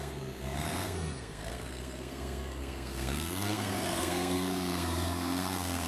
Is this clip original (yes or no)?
no